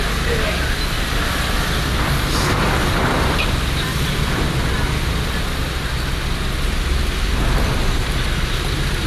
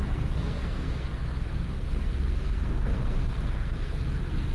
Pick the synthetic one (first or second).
second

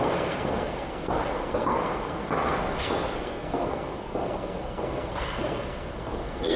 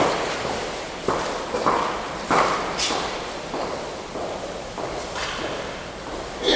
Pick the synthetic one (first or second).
first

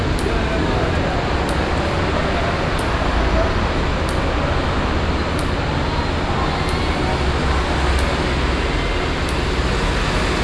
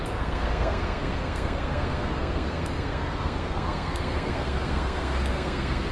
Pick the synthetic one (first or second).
second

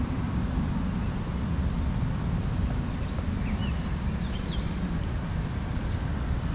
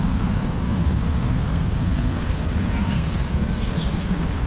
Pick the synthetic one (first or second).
second